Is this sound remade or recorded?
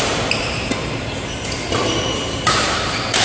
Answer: recorded